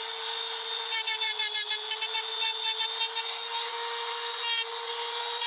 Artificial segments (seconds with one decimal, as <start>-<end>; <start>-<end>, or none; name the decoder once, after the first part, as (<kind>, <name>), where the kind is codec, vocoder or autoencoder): none